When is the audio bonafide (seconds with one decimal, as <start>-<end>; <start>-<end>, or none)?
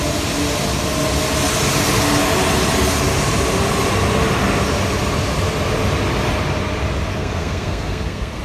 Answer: 0.0-7.2